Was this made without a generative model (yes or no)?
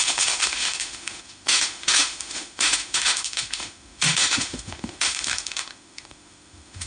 no